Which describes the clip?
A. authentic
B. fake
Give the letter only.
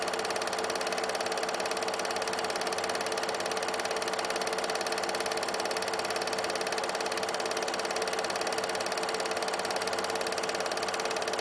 A